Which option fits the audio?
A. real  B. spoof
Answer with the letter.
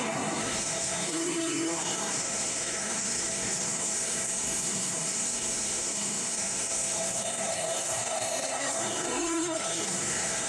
B